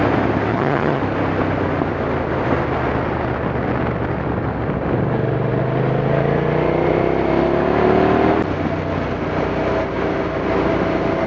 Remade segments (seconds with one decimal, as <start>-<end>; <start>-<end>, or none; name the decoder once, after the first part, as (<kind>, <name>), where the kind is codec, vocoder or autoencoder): 0.5-1.0 (vocoder, HiFi-GAN)